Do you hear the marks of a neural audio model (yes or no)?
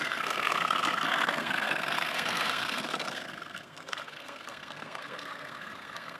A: yes